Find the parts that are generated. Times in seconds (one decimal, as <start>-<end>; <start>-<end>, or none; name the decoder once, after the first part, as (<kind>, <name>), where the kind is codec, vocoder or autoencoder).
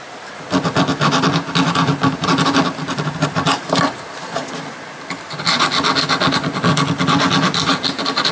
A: none